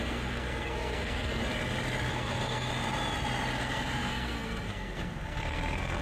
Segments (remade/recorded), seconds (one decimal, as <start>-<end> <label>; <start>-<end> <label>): 0.0-1.4 remade; 1.4-2.1 recorded; 2.1-2.7 remade; 2.7-3.6 recorded; 3.6-6.0 remade